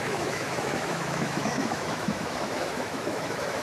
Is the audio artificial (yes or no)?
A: yes